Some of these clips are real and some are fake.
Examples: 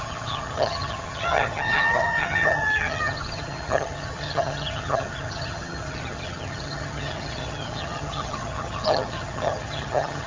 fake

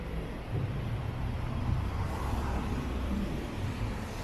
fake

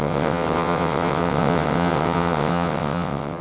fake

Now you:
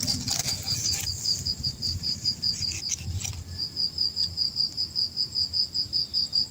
real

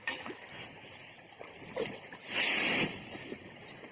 real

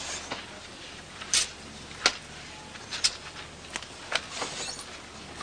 real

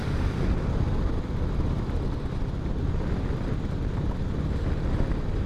fake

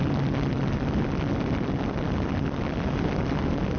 real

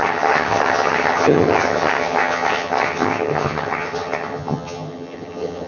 fake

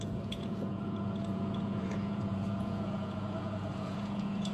fake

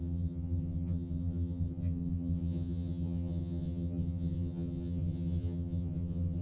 fake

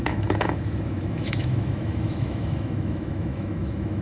fake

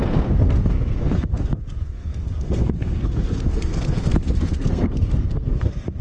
fake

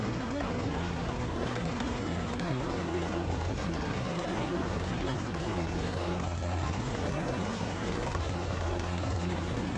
fake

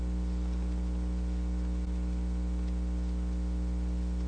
real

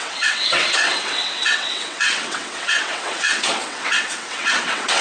fake